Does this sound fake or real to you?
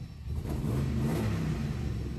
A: real